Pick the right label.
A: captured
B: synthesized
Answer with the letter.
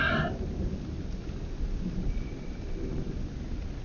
A